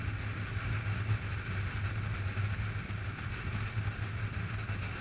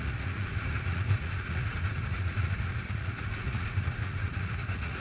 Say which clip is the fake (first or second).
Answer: second